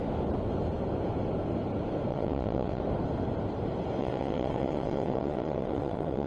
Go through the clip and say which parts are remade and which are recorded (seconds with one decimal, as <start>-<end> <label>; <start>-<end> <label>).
0.0-2.1 recorded; 2.1-2.8 remade; 2.8-4.0 recorded; 4.0-6.3 remade